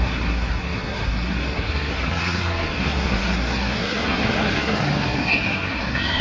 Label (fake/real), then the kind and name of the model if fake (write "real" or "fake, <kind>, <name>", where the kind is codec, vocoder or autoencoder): fake, codec, SNAC